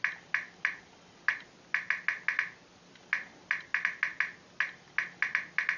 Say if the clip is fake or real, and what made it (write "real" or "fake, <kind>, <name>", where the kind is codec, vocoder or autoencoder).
real